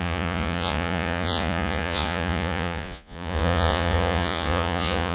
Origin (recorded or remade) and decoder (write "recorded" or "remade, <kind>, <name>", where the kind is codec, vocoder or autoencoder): remade, vocoder, Vocos